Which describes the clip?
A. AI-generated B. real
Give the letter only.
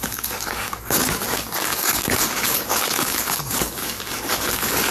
A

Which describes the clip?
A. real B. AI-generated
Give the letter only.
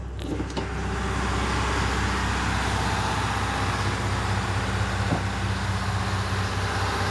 A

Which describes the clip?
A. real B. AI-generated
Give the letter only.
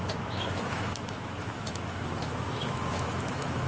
B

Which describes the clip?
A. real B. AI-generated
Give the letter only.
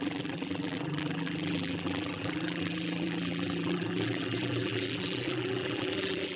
B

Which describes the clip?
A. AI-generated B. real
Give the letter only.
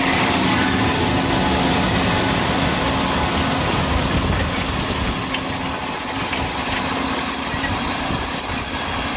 B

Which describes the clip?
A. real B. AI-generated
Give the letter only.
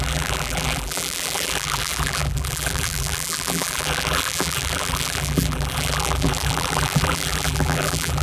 B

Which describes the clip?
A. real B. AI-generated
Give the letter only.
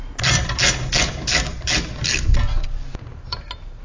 A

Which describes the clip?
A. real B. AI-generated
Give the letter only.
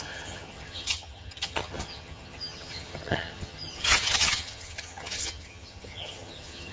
B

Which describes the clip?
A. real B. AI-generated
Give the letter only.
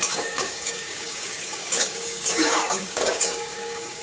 B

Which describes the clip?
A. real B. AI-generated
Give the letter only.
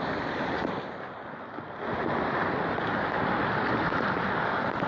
B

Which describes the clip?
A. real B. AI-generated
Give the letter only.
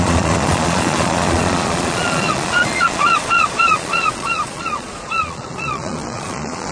B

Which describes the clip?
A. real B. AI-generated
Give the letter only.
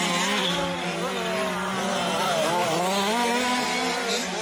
A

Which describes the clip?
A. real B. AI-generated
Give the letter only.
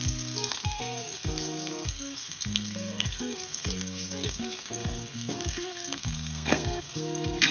B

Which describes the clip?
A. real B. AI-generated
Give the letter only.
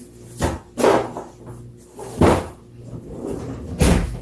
A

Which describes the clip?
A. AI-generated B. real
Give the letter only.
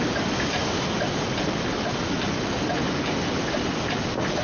B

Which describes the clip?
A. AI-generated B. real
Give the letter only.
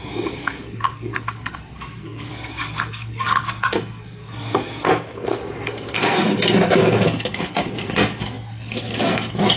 A